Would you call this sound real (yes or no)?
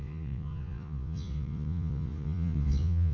no